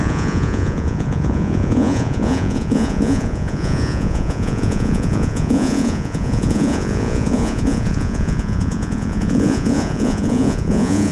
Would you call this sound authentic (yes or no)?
no